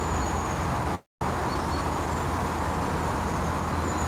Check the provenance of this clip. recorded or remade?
recorded